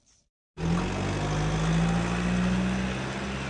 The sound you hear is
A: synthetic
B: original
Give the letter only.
B